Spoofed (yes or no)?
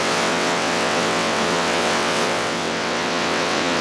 yes